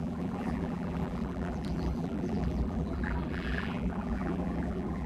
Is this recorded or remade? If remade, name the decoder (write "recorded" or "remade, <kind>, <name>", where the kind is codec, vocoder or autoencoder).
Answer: remade, vocoder, BigVGAN v2